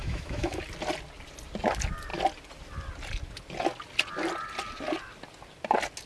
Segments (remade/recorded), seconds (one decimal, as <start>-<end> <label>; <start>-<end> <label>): 0.0-0.6 remade; 0.6-6.1 recorded